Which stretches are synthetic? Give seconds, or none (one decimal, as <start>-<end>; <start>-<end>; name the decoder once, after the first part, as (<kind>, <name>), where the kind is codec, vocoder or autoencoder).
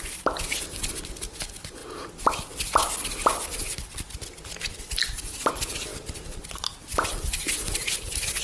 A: 0.0-1.8 (vocoder, BigVGAN v2); 5.5-5.9; 7.1-8.4